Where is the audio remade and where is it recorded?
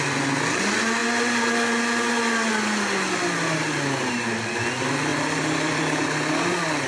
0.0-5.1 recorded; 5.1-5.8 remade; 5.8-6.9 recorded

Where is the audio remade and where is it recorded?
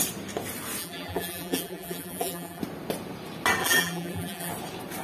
0.0-0.8 recorded; 0.8-2.6 remade; 2.6-3.6 recorded; 3.6-4.5 remade; 4.5-5.0 recorded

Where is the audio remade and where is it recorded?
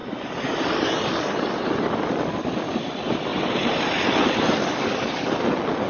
0.0-2.0 remade; 2.0-3.3 recorded; 3.3-4.5 remade; 4.5-5.9 recorded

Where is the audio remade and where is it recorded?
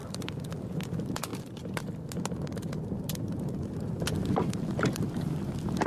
0.0-0.5 remade; 0.5-5.9 recorded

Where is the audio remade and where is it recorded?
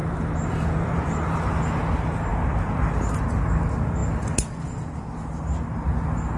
0.0-1.6 remade; 1.6-2.3 recorded; 2.3-3.2 remade; 3.2-6.4 recorded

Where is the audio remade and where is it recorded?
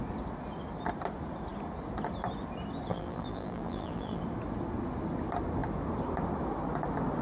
0.0-2.9 recorded; 2.9-4.2 remade; 4.2-7.2 recorded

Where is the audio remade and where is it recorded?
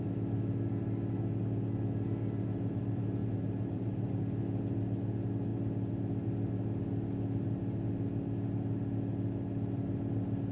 0.0-3.2 recorded; 3.2-4.2 remade; 4.2-10.5 recorded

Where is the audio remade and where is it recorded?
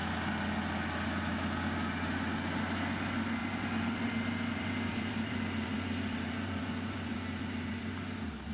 0.0-3.4 recorded; 3.4-7.9 remade; 7.9-8.5 recorded